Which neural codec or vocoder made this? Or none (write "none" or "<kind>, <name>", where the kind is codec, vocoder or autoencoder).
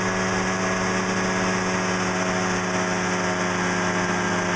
none